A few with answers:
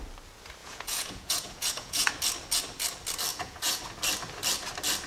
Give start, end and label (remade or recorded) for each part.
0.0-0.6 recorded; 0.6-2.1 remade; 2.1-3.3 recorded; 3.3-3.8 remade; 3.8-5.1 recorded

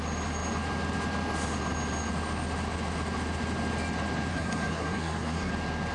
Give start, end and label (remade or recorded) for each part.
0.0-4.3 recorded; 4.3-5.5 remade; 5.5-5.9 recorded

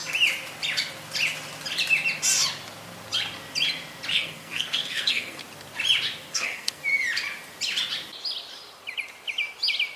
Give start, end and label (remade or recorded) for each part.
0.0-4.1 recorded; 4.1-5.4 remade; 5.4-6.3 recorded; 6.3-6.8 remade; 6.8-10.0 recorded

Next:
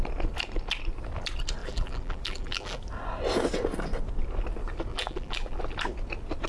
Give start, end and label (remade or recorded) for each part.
0.0-1.6 recorded; 1.6-2.8 remade; 2.8-4.9 recorded; 4.9-5.6 remade; 5.6-6.5 recorded